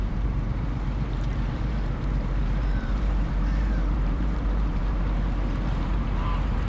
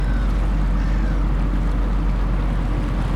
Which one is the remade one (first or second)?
first